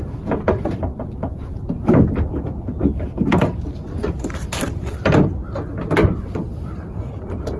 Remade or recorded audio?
recorded